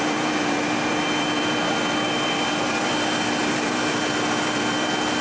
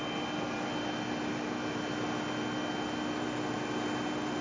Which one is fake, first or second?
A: first